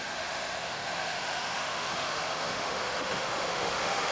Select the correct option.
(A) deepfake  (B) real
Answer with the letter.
A